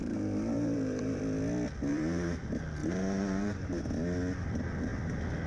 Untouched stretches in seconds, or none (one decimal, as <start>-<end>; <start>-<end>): 1.2-1.9; 2.4-2.8; 3.8-5.5